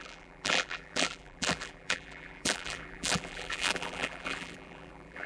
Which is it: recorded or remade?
remade